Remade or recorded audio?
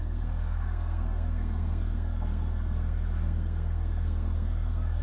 remade